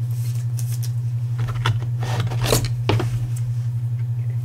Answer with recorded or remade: recorded